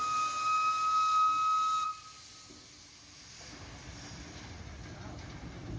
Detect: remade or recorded recorded